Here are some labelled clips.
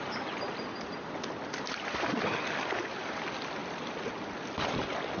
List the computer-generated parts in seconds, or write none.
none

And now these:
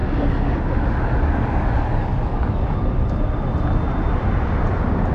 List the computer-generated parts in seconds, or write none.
0.0-2.9 (codec, DAC)